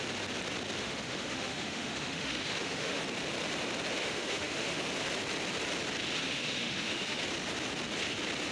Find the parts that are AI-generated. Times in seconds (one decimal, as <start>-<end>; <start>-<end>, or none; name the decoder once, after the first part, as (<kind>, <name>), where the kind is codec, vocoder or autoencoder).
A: 0.8-3.0 (autoencoder, DAC-VAE); 4.0-4.8; 6.2-7.2